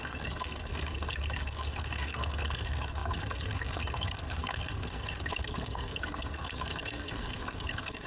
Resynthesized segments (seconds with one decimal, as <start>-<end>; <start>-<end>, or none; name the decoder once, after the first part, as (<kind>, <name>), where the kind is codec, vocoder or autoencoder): 0.0-8.1 (codec, SNAC)